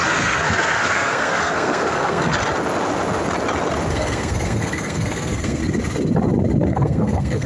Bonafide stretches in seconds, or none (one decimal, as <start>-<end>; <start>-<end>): 2.4-3.9; 5.6-6.7